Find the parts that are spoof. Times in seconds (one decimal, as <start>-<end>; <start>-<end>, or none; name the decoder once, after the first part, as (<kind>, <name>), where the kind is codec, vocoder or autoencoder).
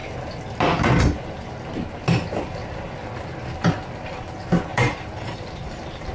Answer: 4.7-6.1 (vocoder, BigVGAN v2)